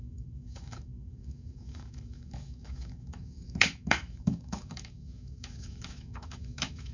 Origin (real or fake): fake